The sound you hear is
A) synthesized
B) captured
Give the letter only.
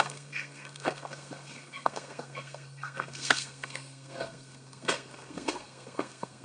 A